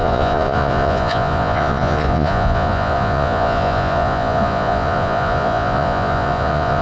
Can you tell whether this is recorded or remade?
remade